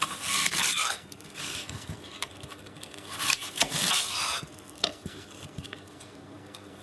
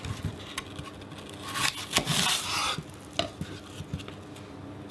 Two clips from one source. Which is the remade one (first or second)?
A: first